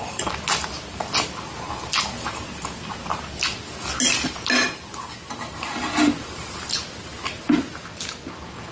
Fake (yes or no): no